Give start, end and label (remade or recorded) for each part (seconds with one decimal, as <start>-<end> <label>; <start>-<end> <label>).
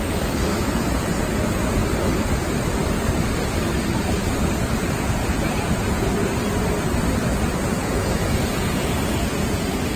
0.0-0.6 recorded; 0.6-1.8 remade; 1.8-4.9 recorded; 4.9-6.2 remade; 6.2-7.7 recorded; 7.7-10.0 remade